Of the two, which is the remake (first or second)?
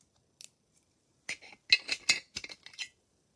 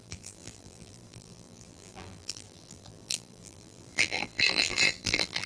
second